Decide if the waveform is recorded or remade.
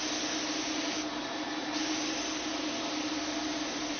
recorded